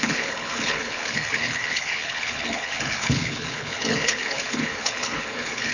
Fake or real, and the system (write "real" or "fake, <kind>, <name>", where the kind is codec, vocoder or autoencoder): fake, codec, HILCodec